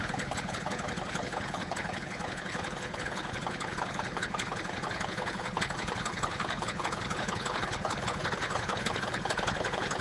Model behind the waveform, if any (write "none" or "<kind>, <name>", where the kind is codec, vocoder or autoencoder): codec, HILCodec